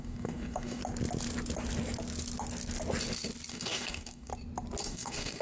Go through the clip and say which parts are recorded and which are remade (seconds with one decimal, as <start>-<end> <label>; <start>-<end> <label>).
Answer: 0.0-0.8 remade; 0.8-3.5 recorded; 3.5-4.3 remade; 4.3-4.8 recorded; 4.8-5.4 remade